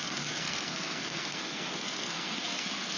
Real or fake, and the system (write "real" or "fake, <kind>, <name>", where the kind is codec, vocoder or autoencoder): fake, codec, SNAC